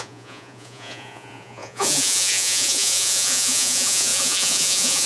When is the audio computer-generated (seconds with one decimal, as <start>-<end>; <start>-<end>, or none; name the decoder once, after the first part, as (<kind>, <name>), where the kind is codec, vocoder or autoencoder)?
0.0-5.1 (vocoder, Vocos)